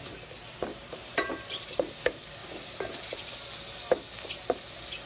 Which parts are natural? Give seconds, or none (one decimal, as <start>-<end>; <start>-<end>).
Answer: 0.0-0.7; 2.0-2.4; 3.3-5.1